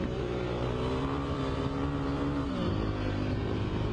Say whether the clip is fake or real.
fake